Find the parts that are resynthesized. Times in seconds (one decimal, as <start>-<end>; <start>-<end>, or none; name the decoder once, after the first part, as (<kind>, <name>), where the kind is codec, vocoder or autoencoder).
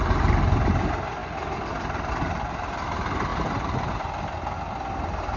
none